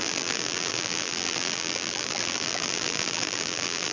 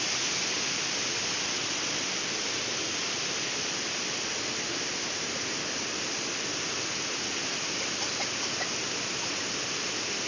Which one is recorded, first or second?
second